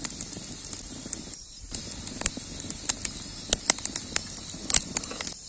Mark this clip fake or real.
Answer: real